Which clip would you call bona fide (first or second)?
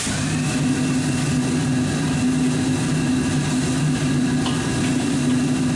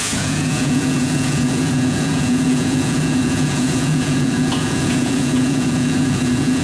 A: first